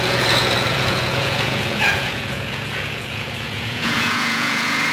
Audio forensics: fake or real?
fake